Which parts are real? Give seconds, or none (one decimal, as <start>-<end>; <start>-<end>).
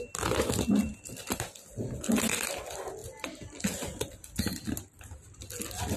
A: 0.0-0.9; 2.6-6.0